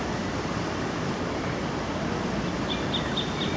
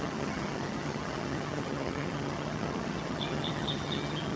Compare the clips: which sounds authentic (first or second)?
first